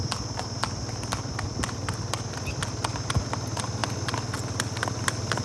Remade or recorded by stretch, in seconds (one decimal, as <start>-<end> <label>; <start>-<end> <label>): 0.0-5.4 recorded